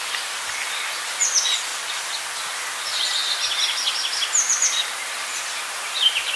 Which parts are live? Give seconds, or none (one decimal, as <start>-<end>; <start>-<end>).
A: 0.0-1.7; 2.2-6.4